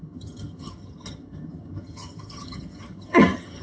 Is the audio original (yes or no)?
no